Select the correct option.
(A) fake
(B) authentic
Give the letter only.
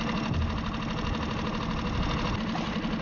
B